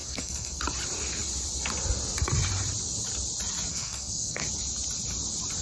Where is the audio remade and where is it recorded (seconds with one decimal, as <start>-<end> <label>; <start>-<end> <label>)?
0.0-0.6 remade; 0.6-3.7 recorded; 3.7-4.4 remade; 4.4-5.6 recorded